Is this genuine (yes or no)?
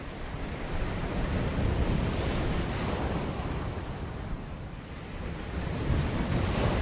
yes